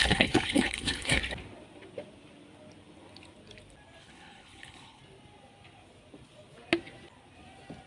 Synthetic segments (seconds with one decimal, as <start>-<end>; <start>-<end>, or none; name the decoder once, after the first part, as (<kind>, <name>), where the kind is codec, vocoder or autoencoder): 0.0-1.2 (codec, HILCodec); 4.0-5.0